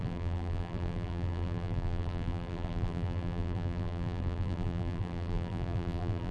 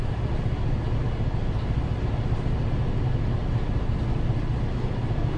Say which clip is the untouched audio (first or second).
second